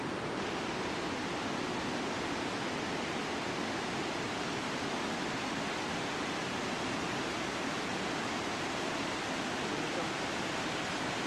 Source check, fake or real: real